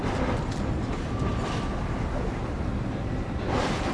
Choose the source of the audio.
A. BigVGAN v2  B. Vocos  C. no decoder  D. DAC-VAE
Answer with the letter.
C